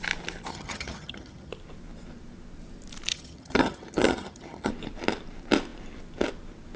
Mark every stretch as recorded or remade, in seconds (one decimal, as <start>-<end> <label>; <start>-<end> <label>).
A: 0.0-0.5 recorded; 0.5-1.5 remade; 1.5-3.1 recorded; 3.1-4.7 remade; 4.7-6.8 recorded